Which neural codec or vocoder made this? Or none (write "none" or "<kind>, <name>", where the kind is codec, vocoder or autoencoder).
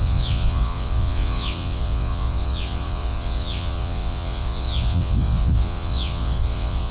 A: vocoder, WaveNeXt